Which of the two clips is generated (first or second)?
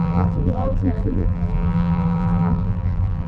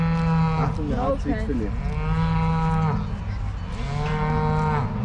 first